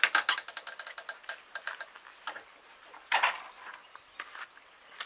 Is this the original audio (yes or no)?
yes